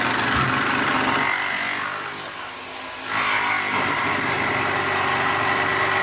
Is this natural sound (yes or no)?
yes